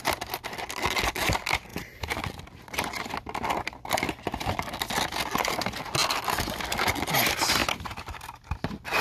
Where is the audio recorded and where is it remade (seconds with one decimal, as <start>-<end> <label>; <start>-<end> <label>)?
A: 0.0-9.0 recorded